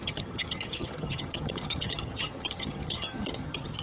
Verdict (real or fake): fake